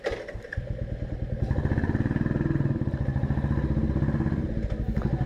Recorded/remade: recorded